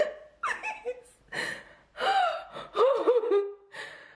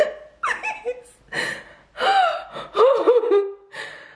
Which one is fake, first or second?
first